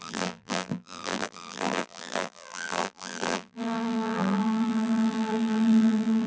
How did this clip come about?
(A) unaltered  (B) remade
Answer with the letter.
B